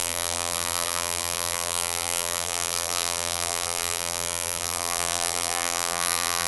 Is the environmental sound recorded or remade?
remade